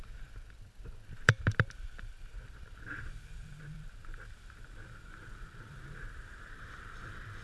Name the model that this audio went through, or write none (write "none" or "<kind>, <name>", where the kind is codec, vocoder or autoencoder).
vocoder, BigVGAN v2